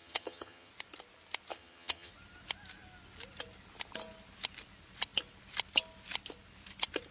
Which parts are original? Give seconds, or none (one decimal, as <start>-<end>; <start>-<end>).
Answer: 0.7-1.5; 2.1-7.1